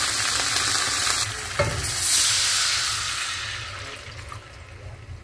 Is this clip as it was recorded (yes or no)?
yes